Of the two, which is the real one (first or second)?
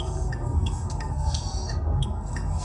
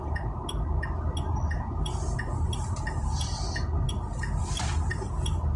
second